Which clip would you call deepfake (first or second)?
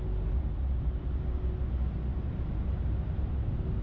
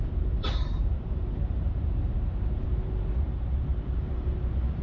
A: second